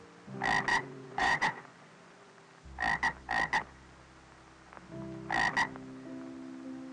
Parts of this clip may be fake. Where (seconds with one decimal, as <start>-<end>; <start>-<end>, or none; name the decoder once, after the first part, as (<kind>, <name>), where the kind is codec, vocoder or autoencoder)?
0.7-2.4 (vocoder, Vocos)